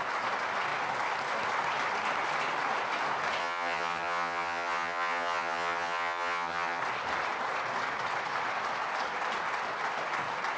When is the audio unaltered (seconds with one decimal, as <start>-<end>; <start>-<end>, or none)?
0.0-3.4; 6.8-10.6